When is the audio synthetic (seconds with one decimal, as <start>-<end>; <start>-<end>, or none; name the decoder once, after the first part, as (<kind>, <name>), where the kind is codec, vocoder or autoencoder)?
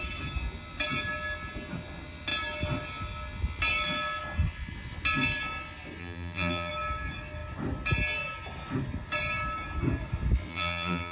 6.0-6.7 (vocoder, BigVGAN v2); 10.5-11.1